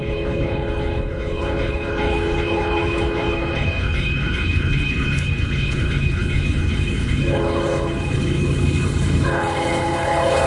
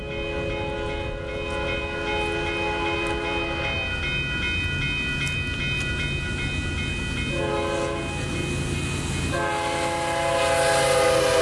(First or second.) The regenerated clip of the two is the first